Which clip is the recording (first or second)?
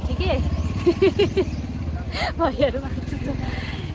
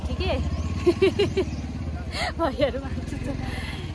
second